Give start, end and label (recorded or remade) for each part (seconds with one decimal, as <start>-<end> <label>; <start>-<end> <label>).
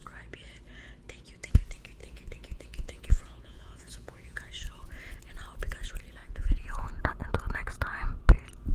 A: 0.0-2.0 recorded; 2.0-4.5 remade; 4.5-6.2 recorded; 6.2-7.0 remade; 7.0-8.7 recorded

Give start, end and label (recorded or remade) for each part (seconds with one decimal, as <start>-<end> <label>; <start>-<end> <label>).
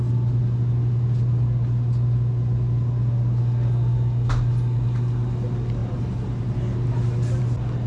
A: 0.0-7.9 recorded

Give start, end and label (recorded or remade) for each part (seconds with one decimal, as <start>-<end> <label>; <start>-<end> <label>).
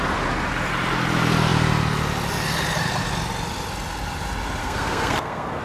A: 0.0-4.6 recorded; 4.6-5.6 remade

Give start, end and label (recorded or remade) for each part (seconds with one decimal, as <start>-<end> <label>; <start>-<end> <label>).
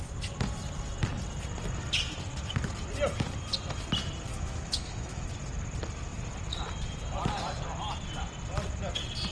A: 0.0-4.3 recorded; 4.3-5.3 remade; 5.3-9.3 recorded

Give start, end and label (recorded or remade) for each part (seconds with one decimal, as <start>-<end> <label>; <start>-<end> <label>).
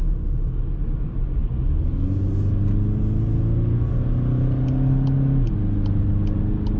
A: 0.0-6.8 recorded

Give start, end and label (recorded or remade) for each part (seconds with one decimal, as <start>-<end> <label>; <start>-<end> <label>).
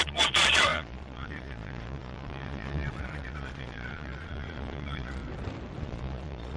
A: 0.0-5.2 remade; 5.2-5.8 recorded; 5.8-6.6 remade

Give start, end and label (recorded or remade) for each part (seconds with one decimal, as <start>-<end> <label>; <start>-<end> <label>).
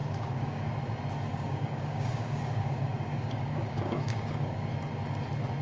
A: 0.0-0.7 remade; 0.7-1.3 recorded; 1.3-4.7 remade; 4.7-5.6 recorded